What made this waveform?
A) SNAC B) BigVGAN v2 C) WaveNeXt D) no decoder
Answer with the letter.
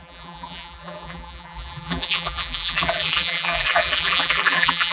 B